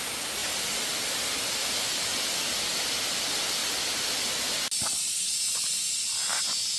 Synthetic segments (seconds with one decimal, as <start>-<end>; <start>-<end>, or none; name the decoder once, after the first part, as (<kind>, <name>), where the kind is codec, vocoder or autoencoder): none